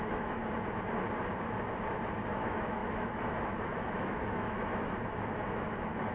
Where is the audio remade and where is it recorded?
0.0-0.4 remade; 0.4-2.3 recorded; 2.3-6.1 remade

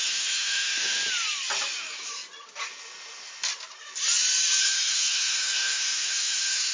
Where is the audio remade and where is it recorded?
0.0-1.0 remade; 1.0-1.8 recorded; 1.8-2.2 remade; 2.2-4.6 recorded; 4.6-6.7 remade

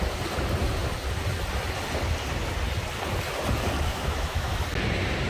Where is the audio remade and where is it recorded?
0.0-3.9 recorded; 3.9-4.5 remade; 4.5-5.3 recorded

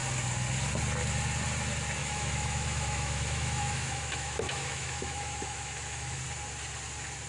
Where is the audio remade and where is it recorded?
0.0-2.0 recorded; 2.0-6.2 remade; 6.2-7.3 recorded

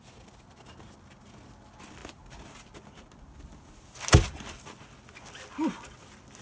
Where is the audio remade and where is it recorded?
0.0-6.4 recorded